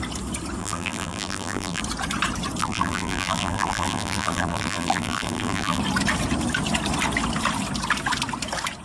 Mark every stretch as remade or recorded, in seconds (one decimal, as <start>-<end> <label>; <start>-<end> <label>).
0.0-0.6 recorded; 0.6-1.8 remade; 1.8-2.6 recorded; 2.6-5.8 remade; 5.8-8.8 recorded